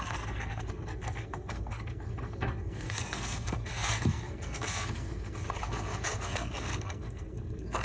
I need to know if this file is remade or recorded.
remade